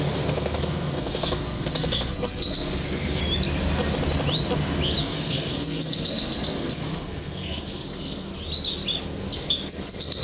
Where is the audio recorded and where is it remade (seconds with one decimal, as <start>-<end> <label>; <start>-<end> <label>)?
0.0-3.2 remade; 3.2-5.0 recorded; 5.0-8.3 remade; 8.3-9.0 recorded; 9.0-10.2 remade